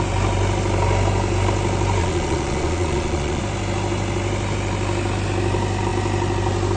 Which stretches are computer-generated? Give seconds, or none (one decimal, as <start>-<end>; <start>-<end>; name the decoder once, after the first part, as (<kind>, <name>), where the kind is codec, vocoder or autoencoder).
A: 2.0-3.4 (vocoder, Vocos)